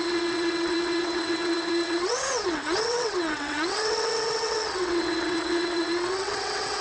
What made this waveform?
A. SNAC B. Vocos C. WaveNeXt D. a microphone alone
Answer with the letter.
C